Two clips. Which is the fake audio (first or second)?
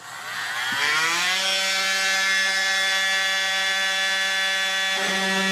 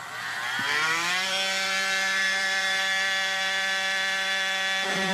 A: second